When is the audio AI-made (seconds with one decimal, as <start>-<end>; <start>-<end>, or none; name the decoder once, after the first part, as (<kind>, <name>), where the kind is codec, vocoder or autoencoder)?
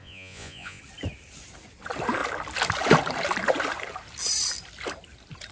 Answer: 0.0-0.8 (vocoder, Vocos)